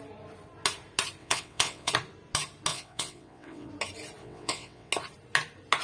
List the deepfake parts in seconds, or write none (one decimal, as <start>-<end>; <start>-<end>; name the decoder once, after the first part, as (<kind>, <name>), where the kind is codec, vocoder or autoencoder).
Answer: 1.2-1.9 (vocoder, WaveNeXt); 2.7-3.7; 4.2-4.9